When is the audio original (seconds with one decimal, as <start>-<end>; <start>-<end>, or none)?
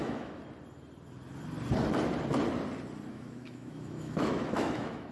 0.4-3.1